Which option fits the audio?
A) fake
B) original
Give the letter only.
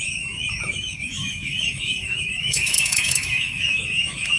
A